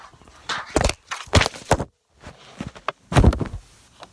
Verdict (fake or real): real